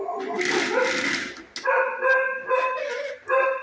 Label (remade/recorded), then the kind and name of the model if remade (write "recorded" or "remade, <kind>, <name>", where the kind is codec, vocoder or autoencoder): recorded